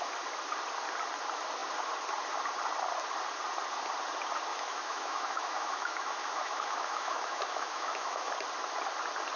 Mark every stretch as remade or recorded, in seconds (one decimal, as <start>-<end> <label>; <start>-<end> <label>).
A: 0.0-4.5 recorded; 4.5-8.3 remade; 8.3-9.4 recorded